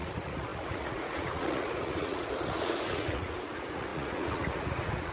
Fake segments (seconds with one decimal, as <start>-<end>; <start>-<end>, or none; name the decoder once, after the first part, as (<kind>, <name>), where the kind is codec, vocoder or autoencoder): 0.0-5.1 (vocoder, Vocos)